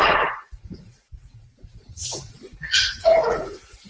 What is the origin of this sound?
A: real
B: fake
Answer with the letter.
B